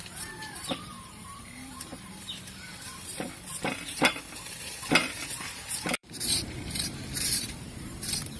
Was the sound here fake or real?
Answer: fake